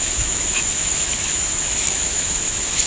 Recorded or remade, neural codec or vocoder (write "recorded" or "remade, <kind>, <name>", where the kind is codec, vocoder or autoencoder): remade, autoencoder, DAC-VAE